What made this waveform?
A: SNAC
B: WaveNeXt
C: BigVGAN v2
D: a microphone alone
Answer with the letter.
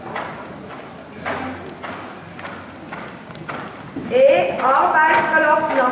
D